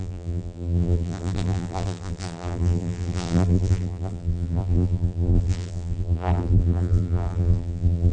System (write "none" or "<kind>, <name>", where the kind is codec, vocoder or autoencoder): vocoder, BigVGAN v2